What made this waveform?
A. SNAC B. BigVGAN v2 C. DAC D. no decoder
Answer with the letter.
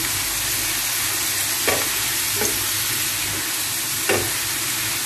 D